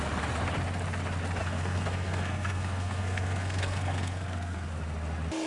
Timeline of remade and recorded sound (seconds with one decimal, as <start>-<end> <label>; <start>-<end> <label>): 0.0-1.4 recorded; 1.4-4.7 remade; 4.7-5.5 recorded